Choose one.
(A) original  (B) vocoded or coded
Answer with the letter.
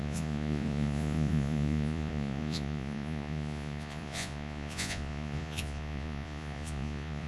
B